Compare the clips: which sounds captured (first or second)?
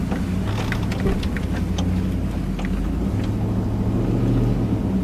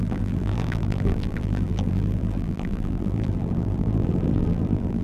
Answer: first